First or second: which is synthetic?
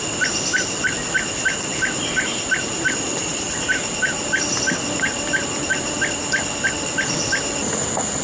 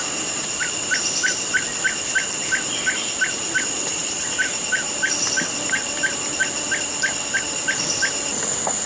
second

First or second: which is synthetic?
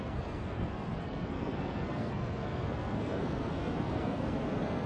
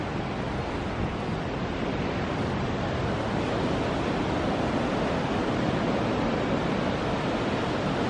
first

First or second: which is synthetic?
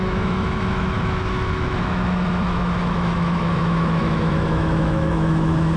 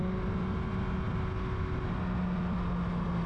first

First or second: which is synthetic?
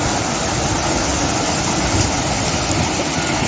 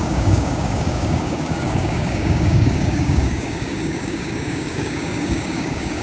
second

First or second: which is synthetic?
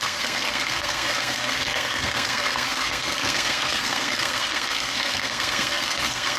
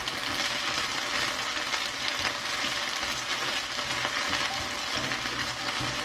first